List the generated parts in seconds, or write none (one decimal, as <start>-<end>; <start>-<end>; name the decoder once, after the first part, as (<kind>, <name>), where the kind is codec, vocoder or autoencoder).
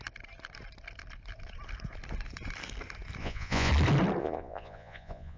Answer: 3.2-3.7 (vocoder, Vocos); 4.2-5.4